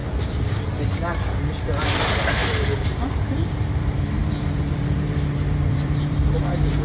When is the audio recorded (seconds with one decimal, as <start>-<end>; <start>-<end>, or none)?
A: 0.0-1.5